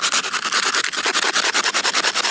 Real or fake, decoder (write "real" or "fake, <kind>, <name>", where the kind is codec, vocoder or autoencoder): real